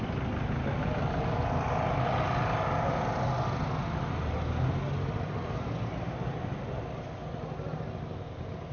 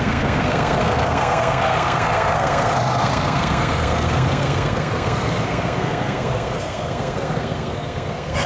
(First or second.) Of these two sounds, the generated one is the second